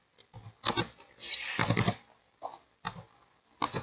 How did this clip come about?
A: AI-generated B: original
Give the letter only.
B